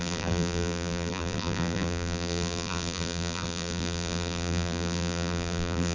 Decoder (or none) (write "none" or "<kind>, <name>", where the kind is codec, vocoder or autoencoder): vocoder, BigVGAN v2